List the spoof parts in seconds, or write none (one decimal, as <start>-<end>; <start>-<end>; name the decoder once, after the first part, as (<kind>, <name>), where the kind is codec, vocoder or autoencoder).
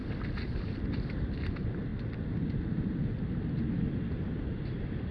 none